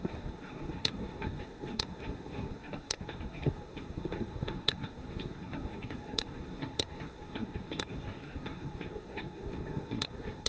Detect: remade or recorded remade